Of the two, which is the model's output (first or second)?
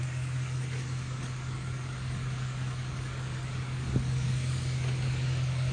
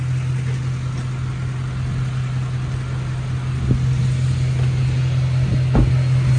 first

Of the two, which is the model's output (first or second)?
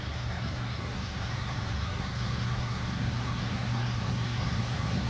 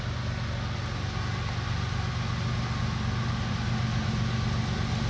first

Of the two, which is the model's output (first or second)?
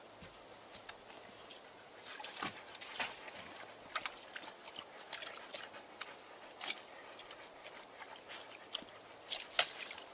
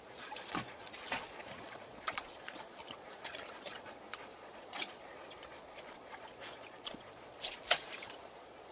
second